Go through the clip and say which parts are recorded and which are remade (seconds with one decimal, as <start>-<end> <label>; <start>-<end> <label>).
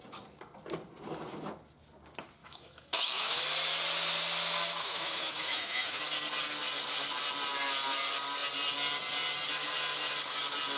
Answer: 0.0-2.4 recorded; 2.4-3.4 remade; 3.4-4.8 recorded; 4.8-6.0 remade; 6.0-10.8 recorded